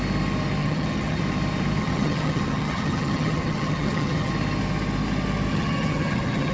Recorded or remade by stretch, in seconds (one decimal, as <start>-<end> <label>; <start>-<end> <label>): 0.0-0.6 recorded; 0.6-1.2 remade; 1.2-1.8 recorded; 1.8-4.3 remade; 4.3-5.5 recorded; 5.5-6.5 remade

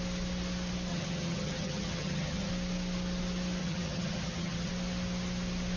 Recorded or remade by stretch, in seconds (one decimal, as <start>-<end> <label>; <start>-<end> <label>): 0.0-0.9 recorded; 0.9-2.5 remade; 2.5-3.6 recorded; 3.6-4.7 remade; 4.7-5.8 recorded

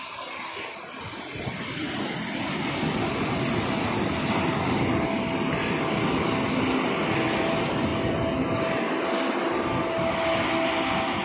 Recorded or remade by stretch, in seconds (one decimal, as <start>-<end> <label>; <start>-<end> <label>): 0.0-11.2 recorded